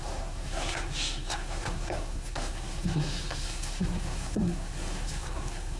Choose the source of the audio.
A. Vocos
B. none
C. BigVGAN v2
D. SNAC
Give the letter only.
D